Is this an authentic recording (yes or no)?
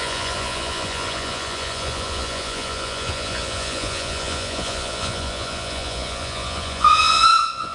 no